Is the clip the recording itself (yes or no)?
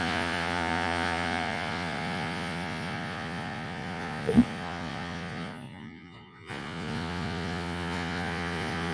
no